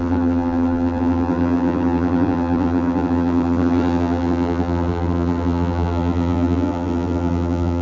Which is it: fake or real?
fake